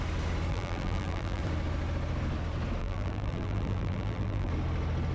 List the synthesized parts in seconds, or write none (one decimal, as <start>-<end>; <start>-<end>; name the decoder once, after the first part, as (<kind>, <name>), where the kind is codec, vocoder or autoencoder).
0.5-1.4 (vocoder, BigVGAN v2); 2.8-4.5